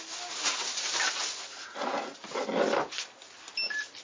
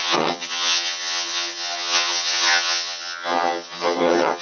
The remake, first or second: second